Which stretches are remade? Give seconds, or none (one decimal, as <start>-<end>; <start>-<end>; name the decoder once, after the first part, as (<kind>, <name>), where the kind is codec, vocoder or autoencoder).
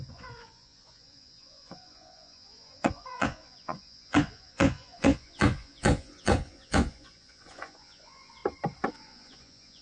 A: 0.0-8.4 (vocoder, Vocos); 8.9-9.8